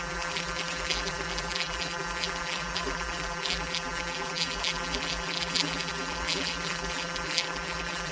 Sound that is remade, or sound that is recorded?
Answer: remade